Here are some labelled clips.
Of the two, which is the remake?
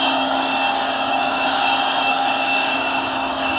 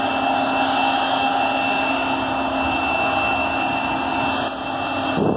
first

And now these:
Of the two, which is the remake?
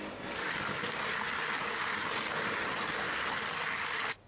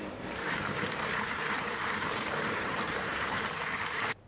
second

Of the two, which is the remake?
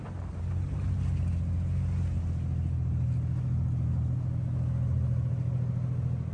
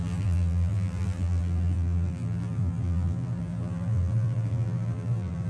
second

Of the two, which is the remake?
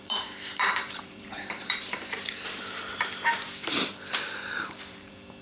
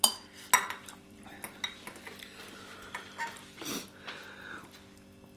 first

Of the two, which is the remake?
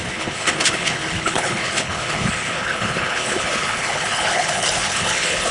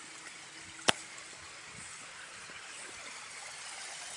first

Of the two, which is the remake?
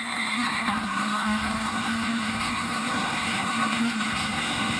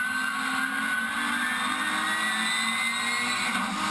first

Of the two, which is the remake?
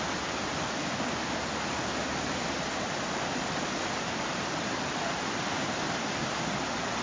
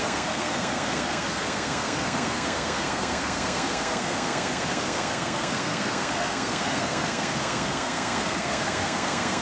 second